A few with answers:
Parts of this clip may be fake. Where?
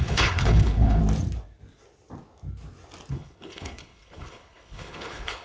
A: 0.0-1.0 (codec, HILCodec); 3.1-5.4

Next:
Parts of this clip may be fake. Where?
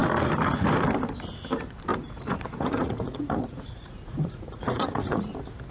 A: 1.9-5.3 (vocoder, Vocos)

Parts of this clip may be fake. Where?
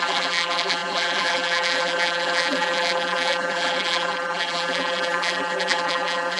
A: 0.0-6.4 (vocoder, BigVGAN v2)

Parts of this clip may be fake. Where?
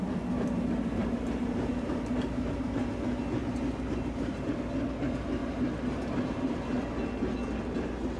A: 1.0-2.9 (vocoder, BigVGAN v2); 3.4-4.6; 5.4-6.8